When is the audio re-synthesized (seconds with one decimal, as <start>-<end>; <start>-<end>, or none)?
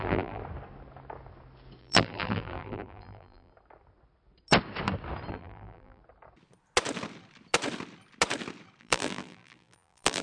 0.0-0.4; 1.8-3.5; 5.3-6.0; 8.8-10.2